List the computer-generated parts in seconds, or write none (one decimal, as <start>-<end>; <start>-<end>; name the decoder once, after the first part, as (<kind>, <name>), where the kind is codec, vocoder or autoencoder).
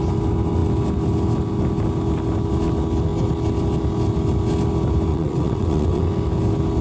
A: 5.1-6.1 (vocoder, WaveNeXt)